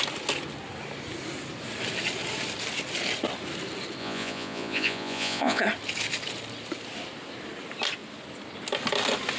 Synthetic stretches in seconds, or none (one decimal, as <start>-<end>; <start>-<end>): 4.0-5.6